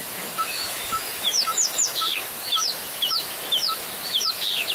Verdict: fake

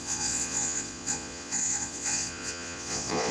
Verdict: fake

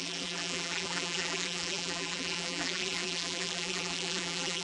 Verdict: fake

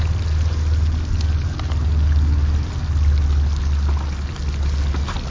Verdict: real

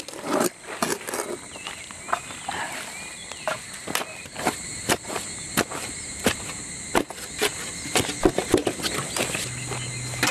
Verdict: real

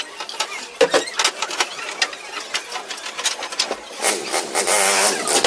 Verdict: real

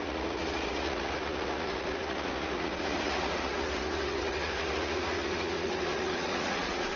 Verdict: fake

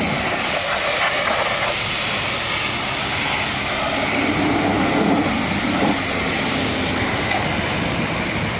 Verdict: real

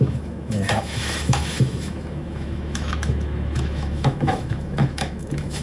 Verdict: fake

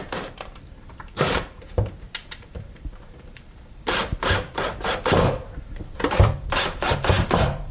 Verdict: fake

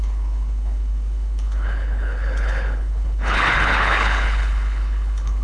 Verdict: fake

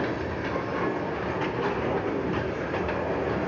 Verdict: real